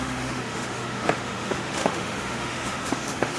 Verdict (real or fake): fake